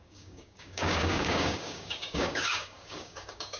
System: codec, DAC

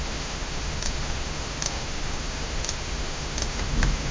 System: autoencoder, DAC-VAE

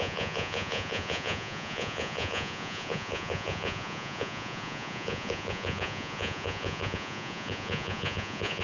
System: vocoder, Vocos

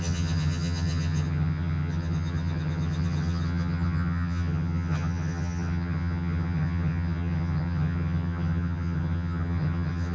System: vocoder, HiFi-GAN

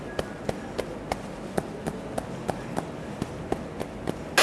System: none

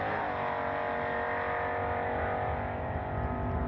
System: none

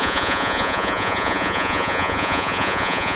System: vocoder, Vocos